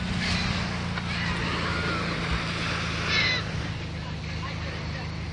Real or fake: real